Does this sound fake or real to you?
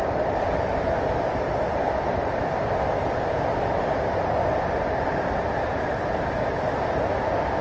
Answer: fake